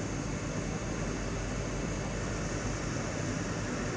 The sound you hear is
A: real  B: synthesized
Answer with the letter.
A